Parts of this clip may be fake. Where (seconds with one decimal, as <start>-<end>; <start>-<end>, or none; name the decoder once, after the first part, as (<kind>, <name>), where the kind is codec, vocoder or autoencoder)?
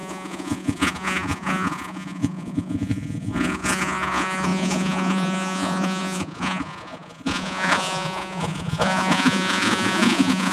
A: 0.0-10.5 (vocoder, Vocos)